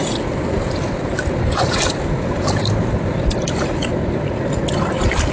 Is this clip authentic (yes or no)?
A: yes